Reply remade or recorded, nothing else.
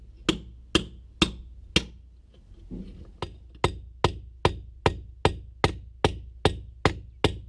recorded